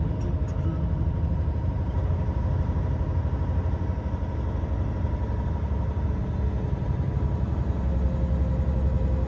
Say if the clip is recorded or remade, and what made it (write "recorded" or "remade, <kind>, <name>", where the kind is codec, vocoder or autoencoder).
recorded